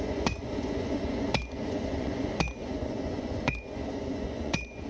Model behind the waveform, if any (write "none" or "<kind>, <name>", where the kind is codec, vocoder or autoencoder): vocoder, Vocos